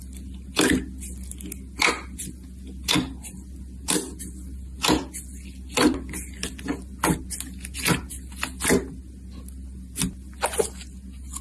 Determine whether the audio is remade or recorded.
recorded